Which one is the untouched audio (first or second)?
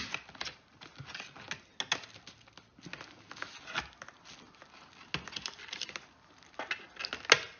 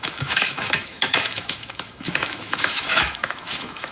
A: first